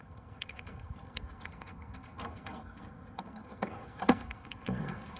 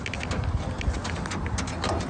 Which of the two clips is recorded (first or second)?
second